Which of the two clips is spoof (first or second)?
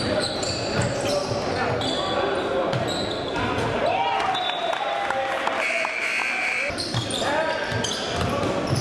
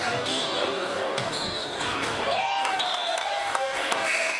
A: second